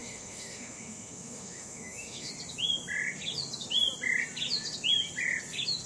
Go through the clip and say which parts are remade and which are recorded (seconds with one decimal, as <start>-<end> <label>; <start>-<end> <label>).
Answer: 0.0-2.3 remade; 2.3-5.9 recorded